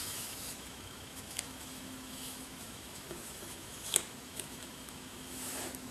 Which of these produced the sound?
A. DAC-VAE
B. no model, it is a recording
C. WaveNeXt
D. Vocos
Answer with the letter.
A